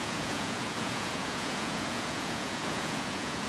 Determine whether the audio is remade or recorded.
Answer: remade